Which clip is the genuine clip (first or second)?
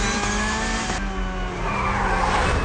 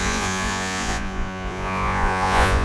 first